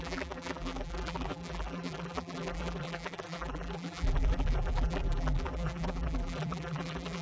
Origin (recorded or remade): remade